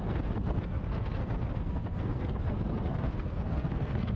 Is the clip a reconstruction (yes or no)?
yes